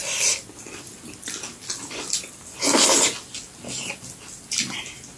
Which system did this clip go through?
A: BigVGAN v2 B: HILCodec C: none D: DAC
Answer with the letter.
C